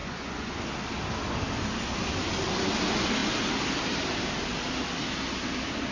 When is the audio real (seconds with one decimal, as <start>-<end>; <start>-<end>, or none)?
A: 0.6-5.9